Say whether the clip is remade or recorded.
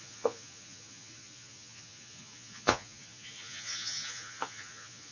remade